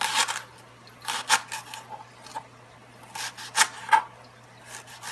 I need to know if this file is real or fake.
real